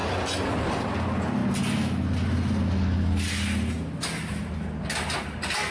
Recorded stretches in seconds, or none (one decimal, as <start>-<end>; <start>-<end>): 0.0-5.7